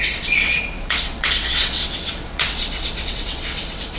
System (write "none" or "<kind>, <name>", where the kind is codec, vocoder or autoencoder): vocoder, WaveNeXt